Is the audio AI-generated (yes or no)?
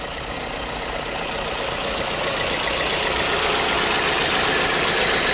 no